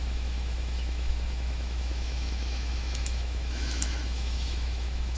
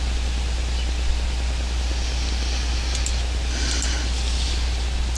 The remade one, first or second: first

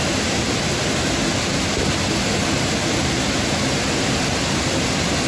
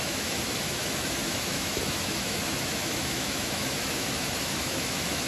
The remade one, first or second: second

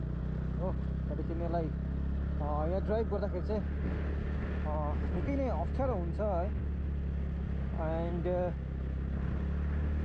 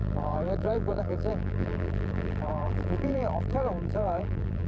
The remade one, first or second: second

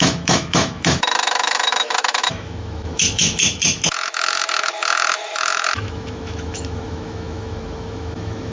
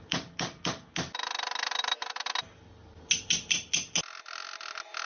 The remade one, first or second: first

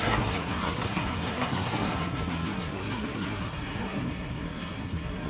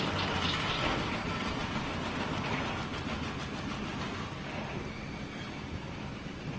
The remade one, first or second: first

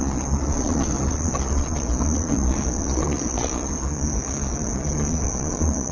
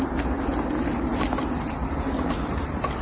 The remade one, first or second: first